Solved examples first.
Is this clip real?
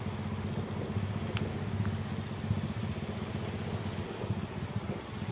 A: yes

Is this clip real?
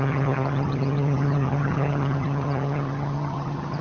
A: no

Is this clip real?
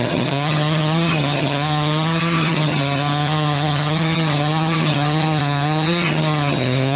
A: no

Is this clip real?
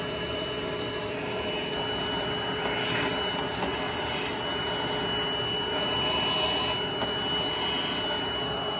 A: yes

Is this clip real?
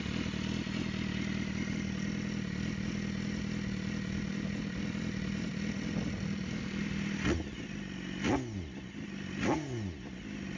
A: yes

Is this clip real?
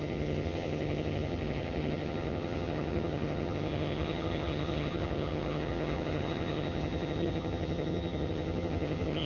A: no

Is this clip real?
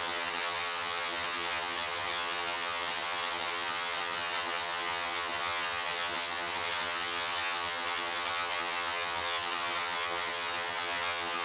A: no